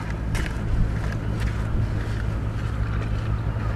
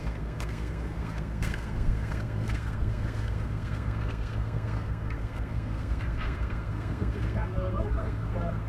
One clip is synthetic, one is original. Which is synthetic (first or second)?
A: second